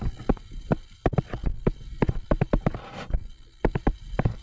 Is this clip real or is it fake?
real